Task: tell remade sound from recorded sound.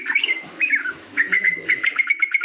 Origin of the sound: remade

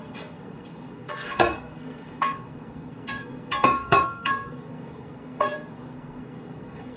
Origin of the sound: remade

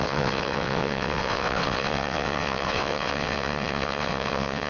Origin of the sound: remade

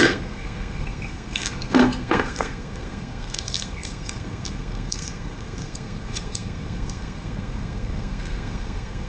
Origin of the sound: remade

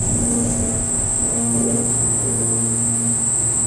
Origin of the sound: remade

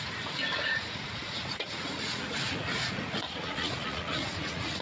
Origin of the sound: remade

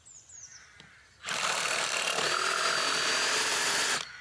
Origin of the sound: recorded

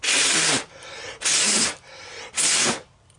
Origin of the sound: recorded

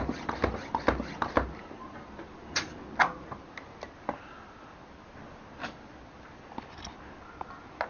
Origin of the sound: recorded